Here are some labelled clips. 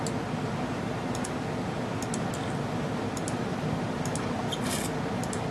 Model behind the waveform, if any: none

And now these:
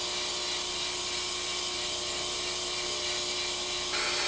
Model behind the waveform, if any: none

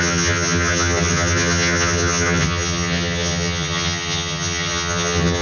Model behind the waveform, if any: vocoder, HiFi-GAN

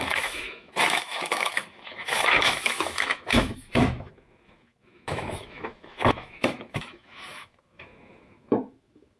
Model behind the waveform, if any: autoencoder, DAC-VAE